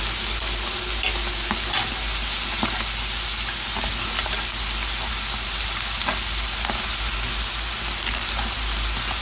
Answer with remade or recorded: recorded